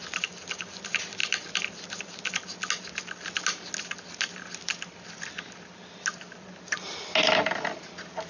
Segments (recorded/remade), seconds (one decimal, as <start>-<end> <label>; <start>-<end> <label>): 0.0-8.3 recorded